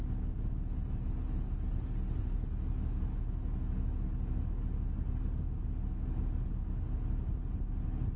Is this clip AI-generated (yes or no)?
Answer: no